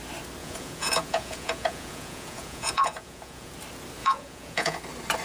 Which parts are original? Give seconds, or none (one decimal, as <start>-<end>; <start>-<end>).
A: 0.0-0.4; 3.5-4.0; 4.8-5.2